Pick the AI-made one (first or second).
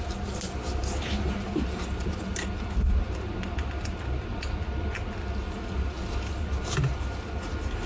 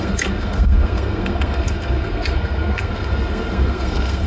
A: second